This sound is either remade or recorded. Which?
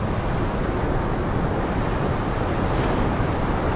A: recorded